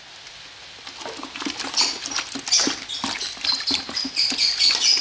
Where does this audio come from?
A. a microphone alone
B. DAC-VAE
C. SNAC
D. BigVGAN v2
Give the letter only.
A